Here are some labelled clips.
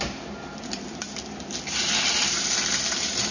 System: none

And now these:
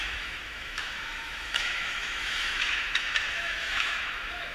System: autoencoder, DAC-VAE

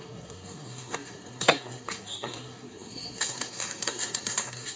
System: codec, SNAC